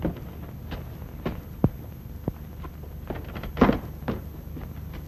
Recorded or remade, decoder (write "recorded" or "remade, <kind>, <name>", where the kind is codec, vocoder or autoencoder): recorded